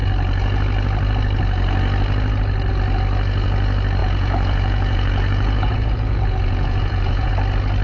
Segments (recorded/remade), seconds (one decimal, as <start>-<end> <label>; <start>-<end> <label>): 0.0-4.0 recorded; 4.0-7.3 remade; 7.3-7.8 recorded